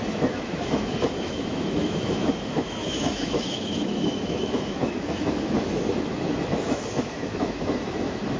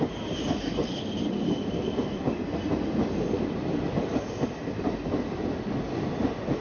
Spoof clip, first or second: first